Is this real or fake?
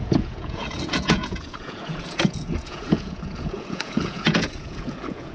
fake